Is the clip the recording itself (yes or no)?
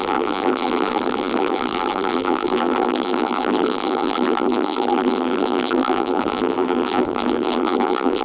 no